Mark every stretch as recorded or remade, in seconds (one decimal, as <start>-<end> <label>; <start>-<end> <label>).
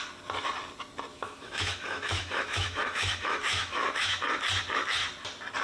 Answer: 0.0-1.1 recorded; 1.1-4.2 remade; 4.2-5.6 recorded